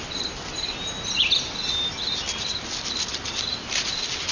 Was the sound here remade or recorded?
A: recorded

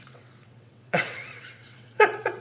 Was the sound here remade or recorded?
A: remade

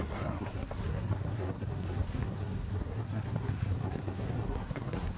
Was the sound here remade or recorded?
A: remade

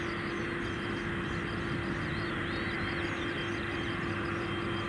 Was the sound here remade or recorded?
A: recorded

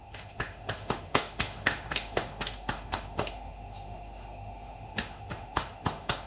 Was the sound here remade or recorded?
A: remade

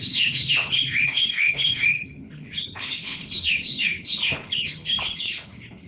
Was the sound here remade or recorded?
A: remade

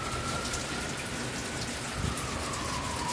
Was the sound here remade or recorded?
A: recorded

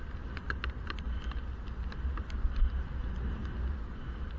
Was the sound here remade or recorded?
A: recorded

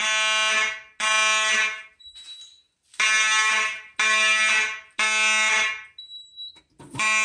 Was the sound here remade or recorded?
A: recorded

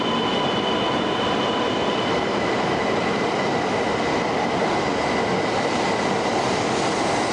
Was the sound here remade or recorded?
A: recorded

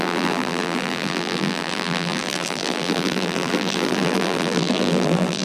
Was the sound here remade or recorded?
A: remade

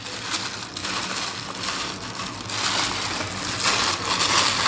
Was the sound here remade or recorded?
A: recorded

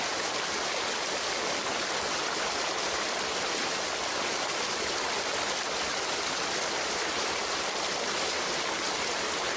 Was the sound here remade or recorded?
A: recorded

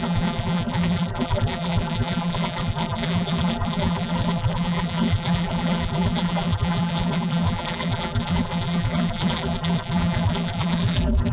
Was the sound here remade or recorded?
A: remade